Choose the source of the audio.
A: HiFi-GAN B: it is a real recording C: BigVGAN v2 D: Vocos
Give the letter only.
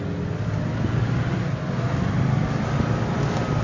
B